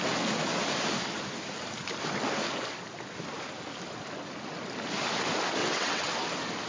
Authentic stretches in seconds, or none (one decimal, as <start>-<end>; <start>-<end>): 0.0-5.6; 6.1-6.7